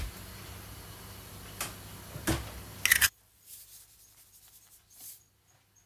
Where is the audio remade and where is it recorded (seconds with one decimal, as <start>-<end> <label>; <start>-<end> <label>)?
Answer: 0.0-5.9 recorded